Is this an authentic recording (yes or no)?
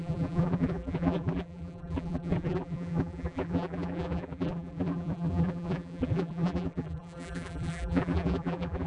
no